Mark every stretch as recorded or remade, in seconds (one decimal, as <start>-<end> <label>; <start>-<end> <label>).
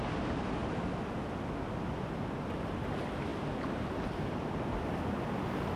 0.0-5.8 recorded